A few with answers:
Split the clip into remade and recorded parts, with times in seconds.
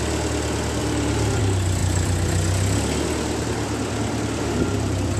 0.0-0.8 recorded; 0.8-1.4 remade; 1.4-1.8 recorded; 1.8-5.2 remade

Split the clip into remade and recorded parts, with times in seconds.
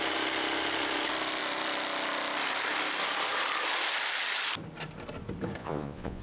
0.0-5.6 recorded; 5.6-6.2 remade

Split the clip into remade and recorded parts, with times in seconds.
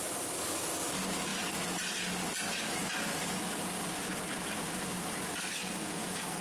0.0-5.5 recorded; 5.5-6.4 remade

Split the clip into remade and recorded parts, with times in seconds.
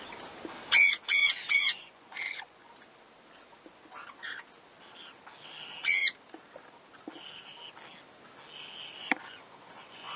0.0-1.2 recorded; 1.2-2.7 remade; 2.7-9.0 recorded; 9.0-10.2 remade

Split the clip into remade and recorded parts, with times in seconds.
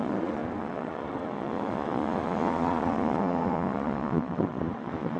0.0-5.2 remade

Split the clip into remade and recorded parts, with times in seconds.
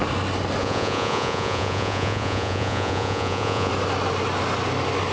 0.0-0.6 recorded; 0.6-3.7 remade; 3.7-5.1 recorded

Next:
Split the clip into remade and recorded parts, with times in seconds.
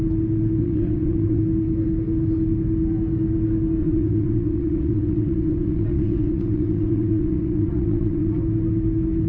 0.0-0.6 recorded; 0.6-1.4 remade; 1.4-3.8 recorded; 3.8-8.4 remade; 8.4-9.3 recorded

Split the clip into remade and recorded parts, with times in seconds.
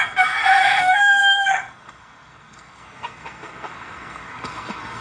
0.0-5.0 remade